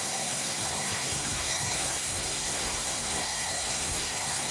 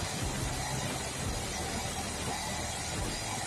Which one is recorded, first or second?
second